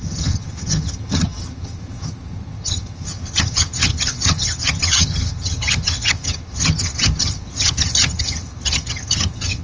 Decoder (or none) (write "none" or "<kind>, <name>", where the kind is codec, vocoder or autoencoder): vocoder, HiFi-GAN